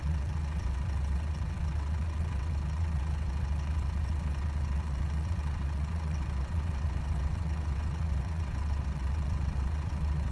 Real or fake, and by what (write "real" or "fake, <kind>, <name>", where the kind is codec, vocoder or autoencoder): fake, vocoder, WaveNeXt